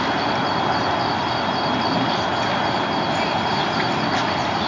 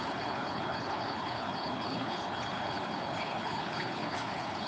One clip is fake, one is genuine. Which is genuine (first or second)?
first